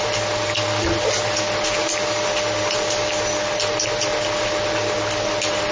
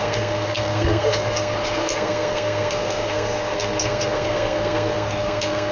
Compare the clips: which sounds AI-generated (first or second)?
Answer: second